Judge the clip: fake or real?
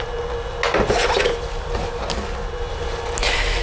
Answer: real